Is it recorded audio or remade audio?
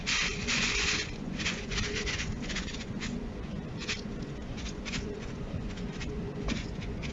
remade